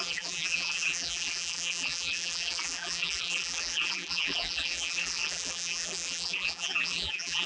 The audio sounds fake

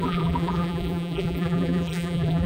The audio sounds fake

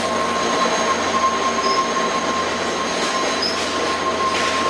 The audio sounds real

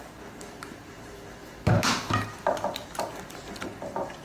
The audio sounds real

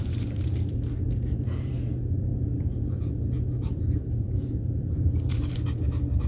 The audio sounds fake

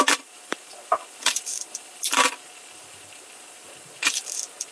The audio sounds fake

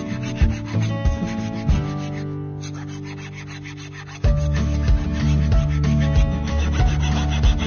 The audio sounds real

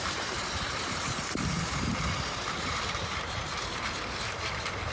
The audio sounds fake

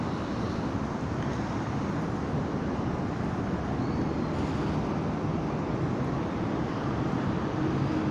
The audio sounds real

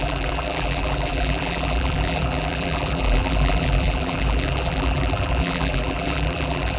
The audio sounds fake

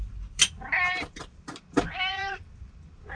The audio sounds fake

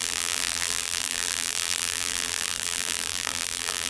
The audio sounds fake